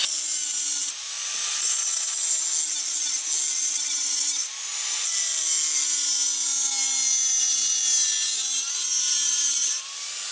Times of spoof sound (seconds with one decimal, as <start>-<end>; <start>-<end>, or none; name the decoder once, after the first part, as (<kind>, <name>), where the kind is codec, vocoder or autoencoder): none